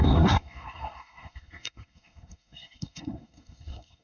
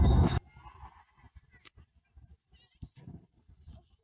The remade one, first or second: first